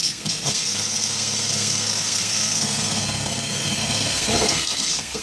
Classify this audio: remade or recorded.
remade